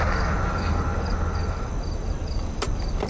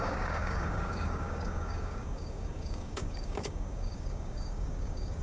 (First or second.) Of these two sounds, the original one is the first